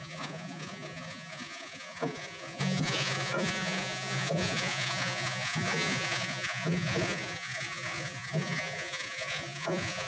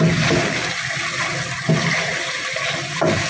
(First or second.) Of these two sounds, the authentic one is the second